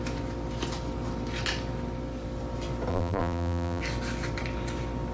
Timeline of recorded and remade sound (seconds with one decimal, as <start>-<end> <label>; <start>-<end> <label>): 0.0-2.9 recorded; 2.9-3.8 remade; 3.8-5.1 recorded